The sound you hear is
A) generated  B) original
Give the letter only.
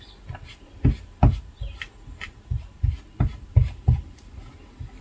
B